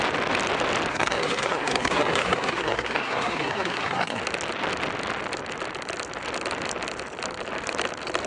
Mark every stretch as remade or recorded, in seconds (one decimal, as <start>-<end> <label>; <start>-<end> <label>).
0.0-0.9 recorded; 0.9-4.2 remade; 4.2-8.3 recorded